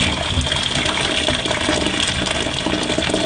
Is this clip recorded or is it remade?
recorded